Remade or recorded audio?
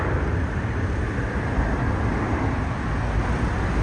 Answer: recorded